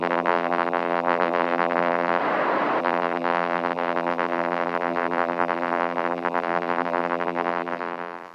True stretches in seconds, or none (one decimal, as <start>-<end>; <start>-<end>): 2.2-2.8